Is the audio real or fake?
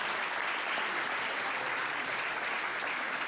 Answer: fake